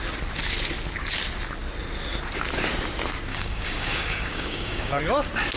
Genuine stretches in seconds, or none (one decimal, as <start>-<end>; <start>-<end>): 0.0-3.3; 5.0-5.6